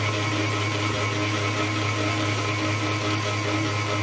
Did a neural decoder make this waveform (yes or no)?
no